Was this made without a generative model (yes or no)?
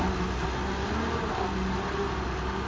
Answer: yes